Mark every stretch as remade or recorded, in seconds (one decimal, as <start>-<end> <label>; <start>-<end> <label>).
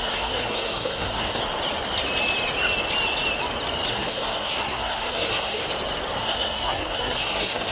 0.0-1.4 remade; 1.4-3.9 recorded; 3.9-5.6 remade; 5.6-6.2 recorded; 6.2-7.7 remade